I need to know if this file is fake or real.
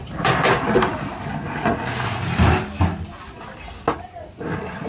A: real